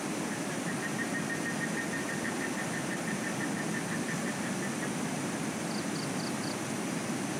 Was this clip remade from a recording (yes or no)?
no